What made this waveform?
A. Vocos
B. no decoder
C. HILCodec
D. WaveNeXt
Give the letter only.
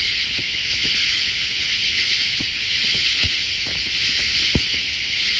C